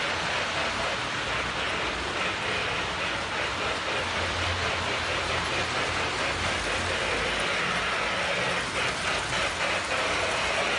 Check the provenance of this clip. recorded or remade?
recorded